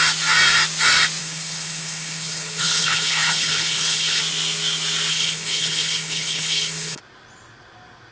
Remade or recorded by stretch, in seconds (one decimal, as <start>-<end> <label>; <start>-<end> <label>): 0.0-1.2 recorded; 1.2-4.2 remade; 4.2-5.1 recorded; 5.1-7.0 remade; 7.0-8.1 recorded